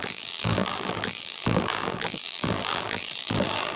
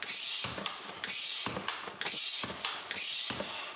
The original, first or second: second